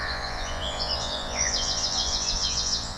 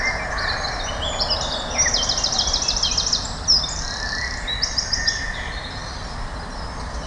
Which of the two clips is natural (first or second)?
second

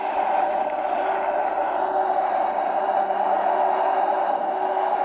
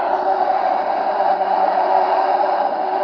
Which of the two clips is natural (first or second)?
first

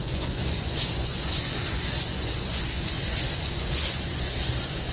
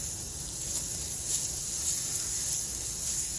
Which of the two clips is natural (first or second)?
second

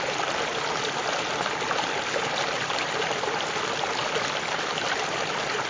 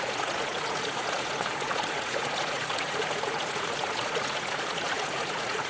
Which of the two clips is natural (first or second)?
first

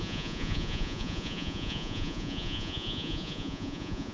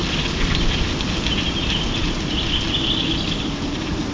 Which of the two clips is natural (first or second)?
second